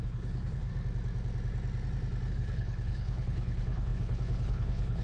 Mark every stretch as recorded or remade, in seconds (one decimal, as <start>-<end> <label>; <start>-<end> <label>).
0.0-0.7 remade; 0.7-2.3 recorded; 2.3-5.0 remade